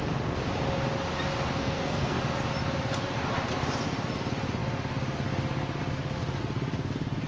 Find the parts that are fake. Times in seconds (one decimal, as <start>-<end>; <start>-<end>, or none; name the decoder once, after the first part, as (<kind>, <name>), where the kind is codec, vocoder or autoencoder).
1.6-2.2 (codec, SNAC)